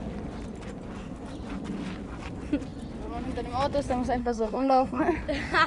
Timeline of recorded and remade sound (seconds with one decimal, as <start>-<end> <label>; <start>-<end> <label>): 0.0-4.2 recorded; 4.2-5.0 remade; 5.0-5.7 recorded